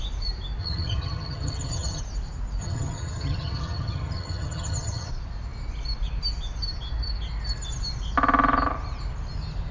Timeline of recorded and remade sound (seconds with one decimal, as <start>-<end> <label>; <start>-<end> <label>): 0.0-0.6 recorded; 0.6-2.0 remade; 2.0-2.6 recorded; 2.6-5.1 remade; 5.1-9.7 recorded